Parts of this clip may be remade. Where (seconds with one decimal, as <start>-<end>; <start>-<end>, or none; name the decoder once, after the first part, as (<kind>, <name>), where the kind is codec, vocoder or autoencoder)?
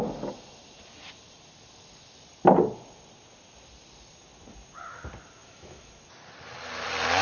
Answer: 5.4-5.9 (autoencoder, DAC-VAE)